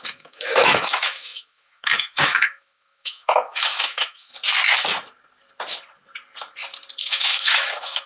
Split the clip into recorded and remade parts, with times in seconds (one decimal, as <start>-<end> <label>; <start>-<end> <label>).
0.0-4.3 remade; 4.3-7.0 recorded; 7.0-8.1 remade